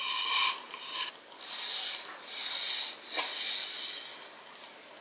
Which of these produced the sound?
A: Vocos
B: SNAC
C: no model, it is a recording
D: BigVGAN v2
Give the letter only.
C